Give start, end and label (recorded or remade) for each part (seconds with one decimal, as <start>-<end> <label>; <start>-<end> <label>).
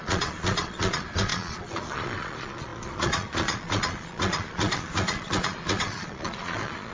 0.0-6.9 remade